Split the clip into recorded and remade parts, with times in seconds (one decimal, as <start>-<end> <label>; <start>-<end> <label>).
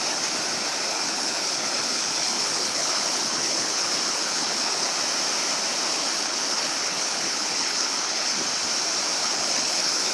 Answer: 0.0-0.9 recorded; 0.9-4.9 remade; 4.9-5.9 recorded; 5.9-8.4 remade; 8.4-9.2 recorded; 9.2-10.1 remade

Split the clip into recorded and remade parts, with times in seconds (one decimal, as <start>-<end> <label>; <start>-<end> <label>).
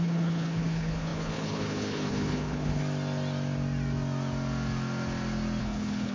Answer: 0.0-2.8 remade; 2.8-5.6 recorded; 5.6-6.1 remade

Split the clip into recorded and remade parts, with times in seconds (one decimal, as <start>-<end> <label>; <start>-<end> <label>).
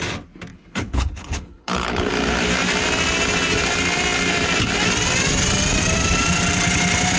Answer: 0.0-0.5 recorded; 0.5-2.1 remade; 2.1-7.2 recorded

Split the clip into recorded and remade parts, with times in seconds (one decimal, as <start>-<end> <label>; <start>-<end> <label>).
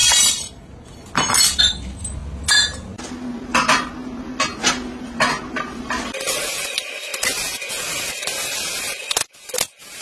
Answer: 0.0-10.0 recorded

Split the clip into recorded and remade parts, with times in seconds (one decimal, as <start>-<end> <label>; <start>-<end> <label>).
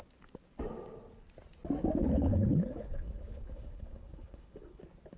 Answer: 0.0-2.0 recorded; 2.0-4.8 remade; 4.8-5.2 recorded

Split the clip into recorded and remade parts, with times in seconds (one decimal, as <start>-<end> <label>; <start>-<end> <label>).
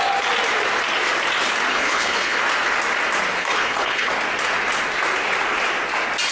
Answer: 0.0-1.7 recorded; 1.7-2.4 remade; 2.4-3.4 recorded; 3.4-4.1 remade; 4.1-6.3 recorded